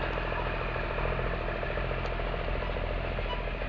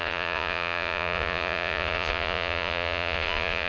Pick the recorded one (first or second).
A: first